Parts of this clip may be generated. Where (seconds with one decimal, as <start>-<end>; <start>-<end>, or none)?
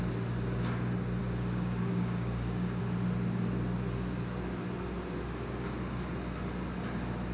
1.2-2.8